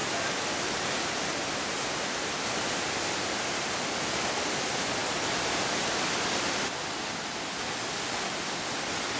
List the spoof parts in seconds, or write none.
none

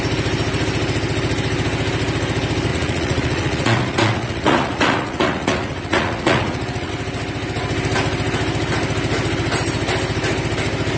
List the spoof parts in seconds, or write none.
2.7-6.9 (vocoder, Vocos)

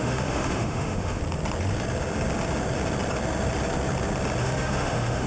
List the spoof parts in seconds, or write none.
0.0-1.2 (autoencoder, DAC-VAE); 4.4-5.3

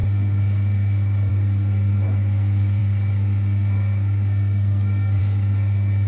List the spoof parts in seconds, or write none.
0.0-6.1 (codec, SNAC)

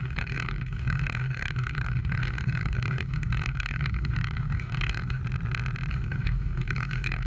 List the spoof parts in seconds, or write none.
0.0-5.2 (codec, DAC); 5.9-7.3

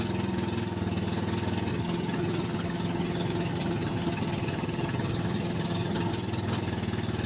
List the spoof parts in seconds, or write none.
1.7-6.1 (vocoder, HiFi-GAN)